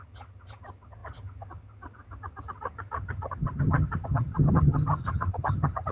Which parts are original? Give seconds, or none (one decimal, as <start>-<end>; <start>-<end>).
none